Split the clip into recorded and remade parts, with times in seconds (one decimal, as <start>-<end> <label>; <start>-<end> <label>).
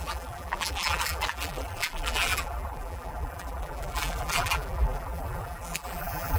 0.0-6.4 remade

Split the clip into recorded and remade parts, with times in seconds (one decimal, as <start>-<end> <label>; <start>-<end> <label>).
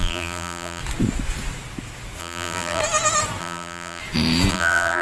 0.0-0.8 remade; 0.8-2.2 recorded; 2.2-2.8 remade; 2.8-3.4 recorded; 3.4-4.0 remade; 4.0-4.5 recorded; 4.5-5.0 remade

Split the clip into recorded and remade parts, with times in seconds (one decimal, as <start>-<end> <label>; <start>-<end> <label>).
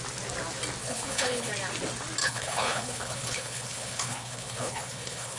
0.0-0.8 recorded; 0.8-1.5 remade; 1.5-2.2 recorded; 2.2-5.4 remade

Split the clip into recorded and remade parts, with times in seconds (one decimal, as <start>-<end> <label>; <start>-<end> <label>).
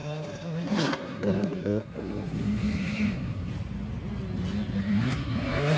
0.0-3.5 remade; 3.5-4.8 recorded; 4.8-5.8 remade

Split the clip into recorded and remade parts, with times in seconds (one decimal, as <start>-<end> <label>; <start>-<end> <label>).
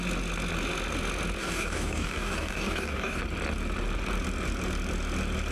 0.0-1.4 recorded; 1.4-3.2 remade; 3.2-5.5 recorded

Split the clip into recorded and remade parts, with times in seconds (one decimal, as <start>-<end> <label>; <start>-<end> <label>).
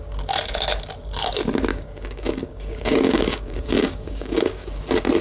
0.0-1.7 recorded; 1.7-4.8 remade; 4.8-5.2 recorded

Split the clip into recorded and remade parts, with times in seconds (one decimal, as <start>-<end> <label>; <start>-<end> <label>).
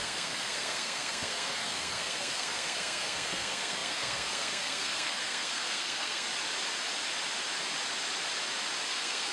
0.0-6.3 remade; 6.3-8.9 recorded; 8.9-9.3 remade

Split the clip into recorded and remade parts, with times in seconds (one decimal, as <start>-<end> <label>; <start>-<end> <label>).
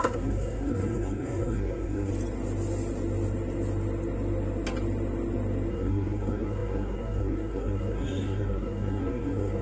0.0-2.1 remade; 2.1-5.7 recorded; 5.7-9.6 remade